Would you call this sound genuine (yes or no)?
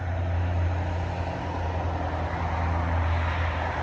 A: yes